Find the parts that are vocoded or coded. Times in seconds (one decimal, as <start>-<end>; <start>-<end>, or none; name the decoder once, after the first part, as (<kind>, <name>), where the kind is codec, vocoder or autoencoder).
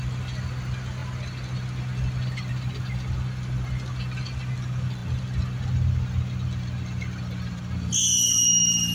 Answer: none